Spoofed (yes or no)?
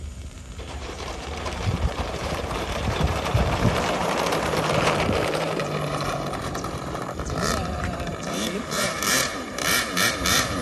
yes